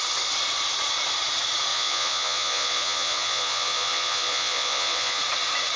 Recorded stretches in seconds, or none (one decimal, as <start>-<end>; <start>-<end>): 0.0-1.7; 5.2-5.8